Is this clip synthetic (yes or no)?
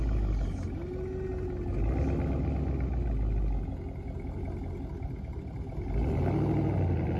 no